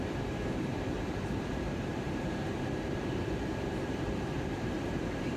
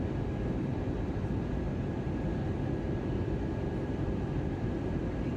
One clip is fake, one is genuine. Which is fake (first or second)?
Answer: first